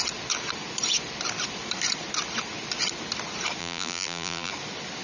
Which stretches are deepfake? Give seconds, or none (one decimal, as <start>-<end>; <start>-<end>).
3.6-4.5